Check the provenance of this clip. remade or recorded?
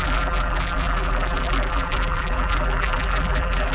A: remade